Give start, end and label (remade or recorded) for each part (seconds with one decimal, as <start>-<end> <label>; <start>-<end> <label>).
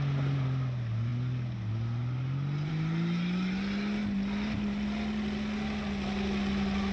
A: 0.0-6.9 recorded